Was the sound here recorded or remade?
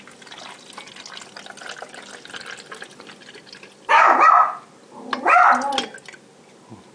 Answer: recorded